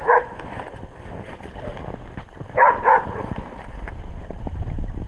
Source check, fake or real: real